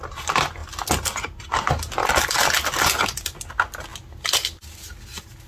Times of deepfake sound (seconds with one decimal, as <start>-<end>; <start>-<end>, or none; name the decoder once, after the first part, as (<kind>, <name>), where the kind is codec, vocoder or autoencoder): none